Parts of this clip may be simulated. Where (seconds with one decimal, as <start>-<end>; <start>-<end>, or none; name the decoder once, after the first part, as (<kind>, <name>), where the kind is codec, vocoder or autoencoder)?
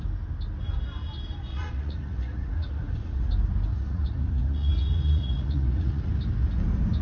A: 1.5-3.3 (vocoder, Vocos); 3.7-6.1